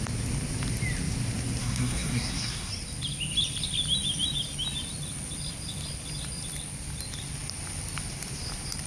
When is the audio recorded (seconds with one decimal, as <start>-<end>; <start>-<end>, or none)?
0.0-1.6; 2.7-8.9